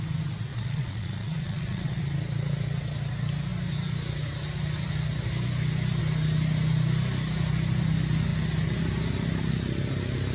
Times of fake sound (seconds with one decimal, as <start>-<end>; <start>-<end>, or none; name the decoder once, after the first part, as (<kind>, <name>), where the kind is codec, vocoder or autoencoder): 0.5-2.0 (vocoder, Vocos)